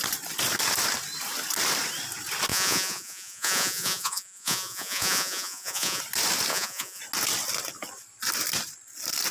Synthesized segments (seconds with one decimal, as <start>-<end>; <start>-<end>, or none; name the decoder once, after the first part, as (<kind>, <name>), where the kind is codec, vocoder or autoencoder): 2.5-6.0 (vocoder, Vocos); 6.5-7.0